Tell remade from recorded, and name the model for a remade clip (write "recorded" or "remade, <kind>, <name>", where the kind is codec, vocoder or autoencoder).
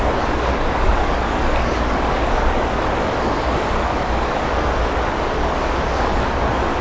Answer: remade, codec, DAC